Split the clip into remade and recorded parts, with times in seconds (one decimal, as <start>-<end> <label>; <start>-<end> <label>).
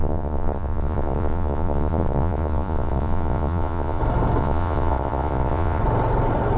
0.0-4.0 remade; 4.0-4.4 recorded; 4.4-5.8 remade; 5.8-6.6 recorded